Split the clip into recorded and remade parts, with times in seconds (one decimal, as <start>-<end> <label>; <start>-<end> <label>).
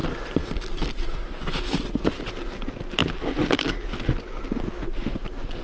0.0-2.0 remade; 2.0-5.6 recorded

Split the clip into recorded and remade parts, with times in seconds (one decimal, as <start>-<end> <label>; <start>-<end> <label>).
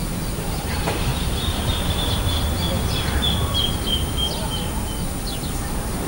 0.0-6.1 recorded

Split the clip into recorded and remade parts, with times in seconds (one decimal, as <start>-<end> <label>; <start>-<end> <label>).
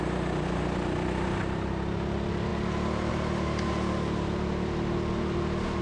0.0-5.8 recorded